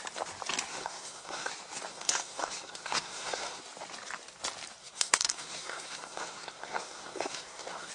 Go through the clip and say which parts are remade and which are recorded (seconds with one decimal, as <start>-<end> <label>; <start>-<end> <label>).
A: 0.0-0.7 recorded; 0.7-1.5 remade; 1.5-1.9 recorded; 1.9-3.6 remade; 3.6-4.8 recorded; 4.8-7.9 remade